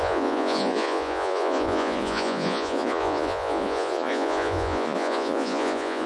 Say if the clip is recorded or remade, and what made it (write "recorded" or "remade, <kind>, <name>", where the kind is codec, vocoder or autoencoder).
remade, vocoder, Vocos